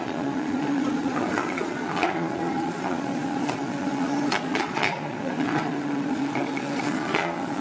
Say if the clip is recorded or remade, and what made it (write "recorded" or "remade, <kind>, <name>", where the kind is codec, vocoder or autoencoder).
remade, vocoder, Vocos